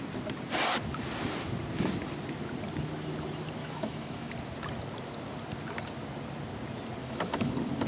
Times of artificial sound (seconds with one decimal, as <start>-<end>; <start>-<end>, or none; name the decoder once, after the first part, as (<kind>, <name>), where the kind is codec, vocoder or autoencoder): 3.6-4.3 (autoencoder, DAC-VAE); 7.0-7.5